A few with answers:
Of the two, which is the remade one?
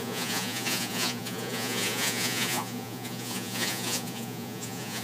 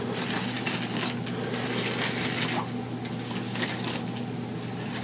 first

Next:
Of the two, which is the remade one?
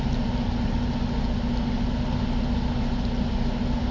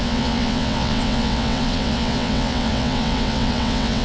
second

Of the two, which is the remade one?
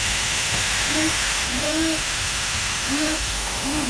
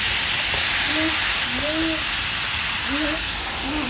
first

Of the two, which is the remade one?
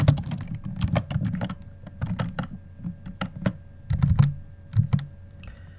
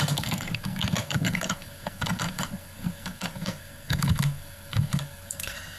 second